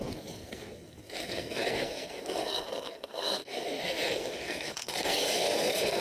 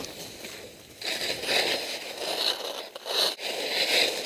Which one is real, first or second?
second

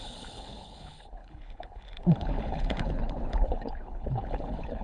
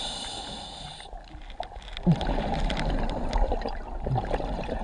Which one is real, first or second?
second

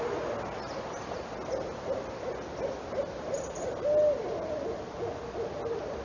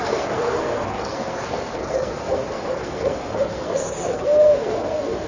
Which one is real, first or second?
first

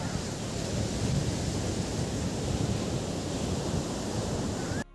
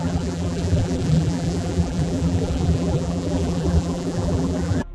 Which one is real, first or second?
first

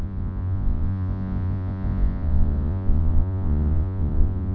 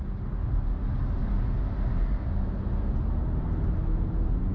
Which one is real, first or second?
second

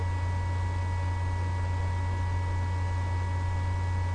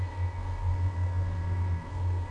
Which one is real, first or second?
first